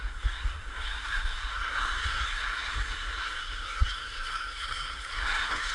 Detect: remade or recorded remade